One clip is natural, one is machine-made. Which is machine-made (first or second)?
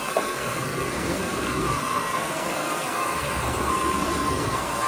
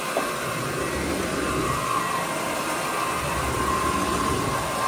first